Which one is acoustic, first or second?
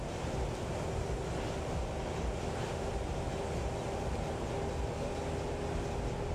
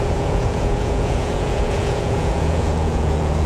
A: first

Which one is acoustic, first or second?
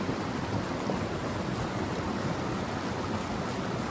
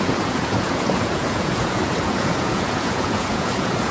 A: first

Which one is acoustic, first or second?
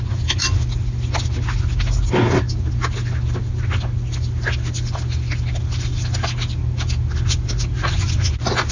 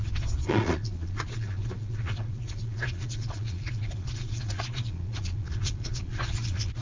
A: first